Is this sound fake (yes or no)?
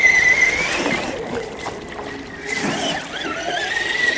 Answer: no